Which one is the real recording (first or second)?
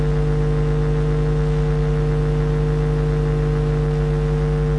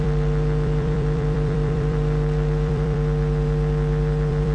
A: first